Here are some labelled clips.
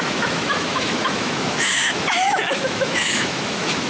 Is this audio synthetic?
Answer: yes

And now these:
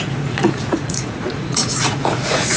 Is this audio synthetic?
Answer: yes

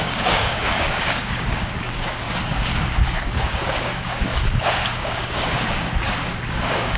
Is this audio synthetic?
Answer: yes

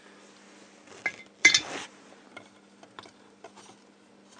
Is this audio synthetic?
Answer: no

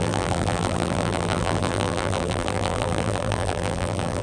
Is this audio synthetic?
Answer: yes